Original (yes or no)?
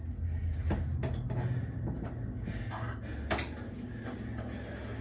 yes